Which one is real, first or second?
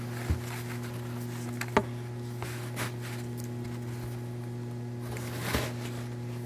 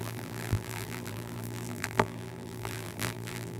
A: first